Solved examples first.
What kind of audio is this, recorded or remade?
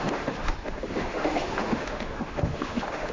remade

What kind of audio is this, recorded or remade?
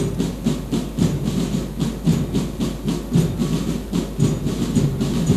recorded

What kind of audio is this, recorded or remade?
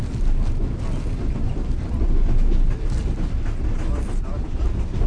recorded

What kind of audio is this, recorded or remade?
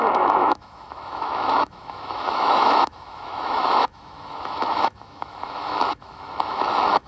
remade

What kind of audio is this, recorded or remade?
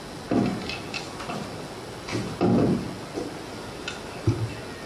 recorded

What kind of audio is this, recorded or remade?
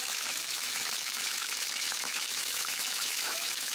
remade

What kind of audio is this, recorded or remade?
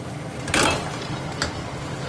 recorded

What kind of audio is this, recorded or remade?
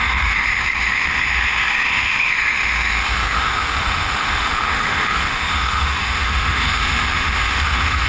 remade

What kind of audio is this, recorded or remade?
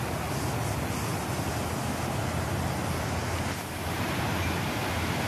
recorded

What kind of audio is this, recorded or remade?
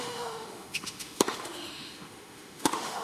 remade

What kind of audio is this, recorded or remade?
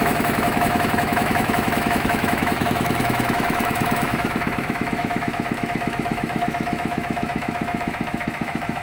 remade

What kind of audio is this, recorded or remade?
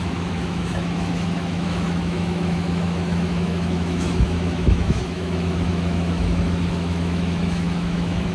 remade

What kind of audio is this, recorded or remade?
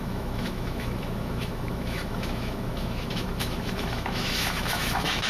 remade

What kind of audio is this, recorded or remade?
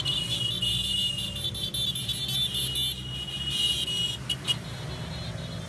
recorded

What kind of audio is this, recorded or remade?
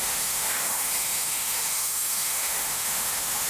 remade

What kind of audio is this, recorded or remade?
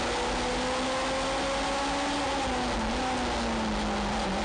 recorded